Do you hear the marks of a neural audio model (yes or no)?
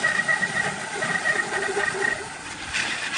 no